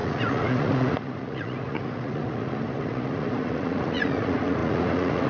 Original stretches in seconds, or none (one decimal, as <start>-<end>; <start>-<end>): none